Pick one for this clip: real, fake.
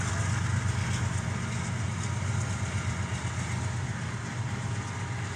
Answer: real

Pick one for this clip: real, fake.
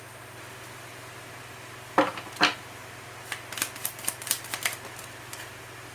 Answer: fake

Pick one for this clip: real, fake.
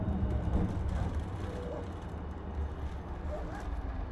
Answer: real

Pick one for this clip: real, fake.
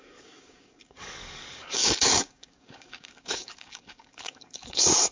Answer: fake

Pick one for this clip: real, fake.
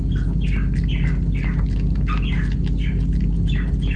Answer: real